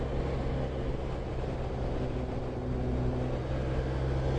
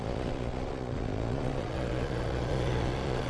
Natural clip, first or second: first